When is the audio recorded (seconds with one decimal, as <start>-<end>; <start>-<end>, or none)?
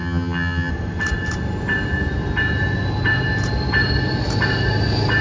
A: 0.7-5.2